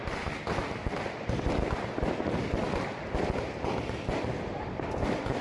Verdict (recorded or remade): recorded